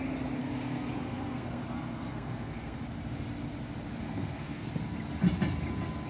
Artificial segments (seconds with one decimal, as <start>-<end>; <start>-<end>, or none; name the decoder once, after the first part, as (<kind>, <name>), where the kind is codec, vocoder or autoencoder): 0.4-2.8 (codec, SNAC); 4.0-4.7